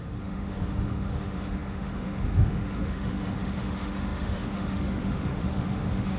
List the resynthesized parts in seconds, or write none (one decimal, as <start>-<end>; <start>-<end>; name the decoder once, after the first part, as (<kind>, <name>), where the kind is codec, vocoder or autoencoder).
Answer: 0.0-6.2 (autoencoder, DAC-VAE)